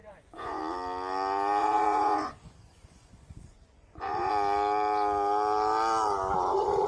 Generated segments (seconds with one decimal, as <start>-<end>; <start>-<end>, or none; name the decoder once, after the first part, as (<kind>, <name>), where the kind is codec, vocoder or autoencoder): 0.0-0.6 (vocoder, Vocos); 1.6-4.3